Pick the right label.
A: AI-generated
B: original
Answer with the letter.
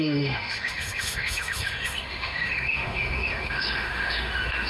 A